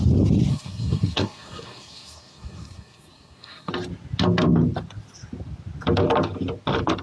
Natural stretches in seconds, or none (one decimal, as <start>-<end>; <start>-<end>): 0.0-0.5; 3.7-7.0